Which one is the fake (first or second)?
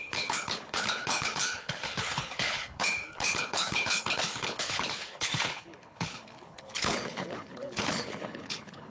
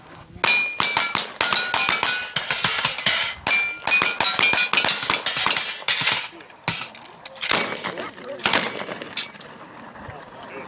first